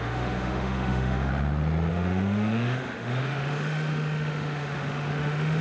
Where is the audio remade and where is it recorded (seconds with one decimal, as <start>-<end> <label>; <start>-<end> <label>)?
0.0-1.3 remade; 1.3-1.9 recorded; 1.9-5.6 remade